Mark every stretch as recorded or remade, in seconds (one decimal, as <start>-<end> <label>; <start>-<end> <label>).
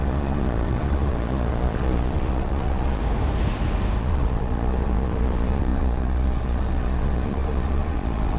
0.0-3.0 remade; 3.0-4.0 recorded; 4.0-8.4 remade